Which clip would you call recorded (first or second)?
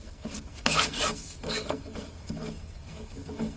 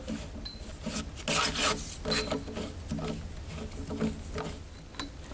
second